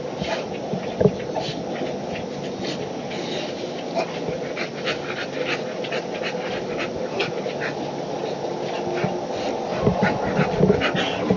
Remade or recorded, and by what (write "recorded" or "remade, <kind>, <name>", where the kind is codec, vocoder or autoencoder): recorded